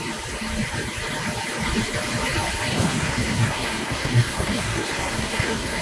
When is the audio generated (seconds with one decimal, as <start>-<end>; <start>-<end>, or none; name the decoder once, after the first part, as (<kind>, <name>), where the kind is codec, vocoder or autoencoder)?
2.7-5.8 (codec, SNAC)